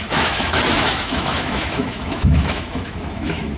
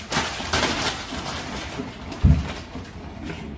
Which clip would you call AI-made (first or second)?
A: first